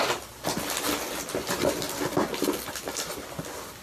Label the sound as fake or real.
real